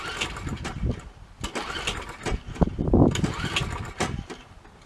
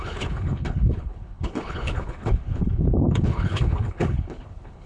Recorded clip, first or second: first